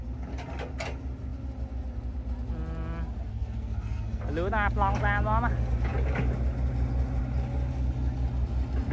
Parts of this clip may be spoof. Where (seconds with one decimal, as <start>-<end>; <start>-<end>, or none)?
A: 3.3-4.2